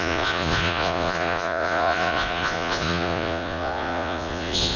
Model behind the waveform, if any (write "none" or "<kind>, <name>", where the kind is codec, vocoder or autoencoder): vocoder, Vocos